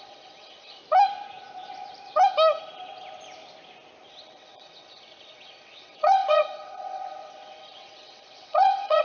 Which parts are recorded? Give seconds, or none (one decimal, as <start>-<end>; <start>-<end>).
0.8-4.1